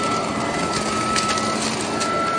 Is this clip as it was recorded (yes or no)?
yes